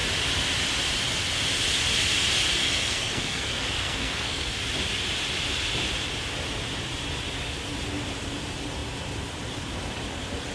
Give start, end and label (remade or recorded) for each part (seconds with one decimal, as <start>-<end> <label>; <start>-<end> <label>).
0.0-2.6 recorded; 2.6-4.6 remade; 4.6-10.5 recorded